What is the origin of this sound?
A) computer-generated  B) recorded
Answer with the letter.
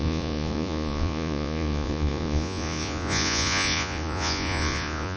A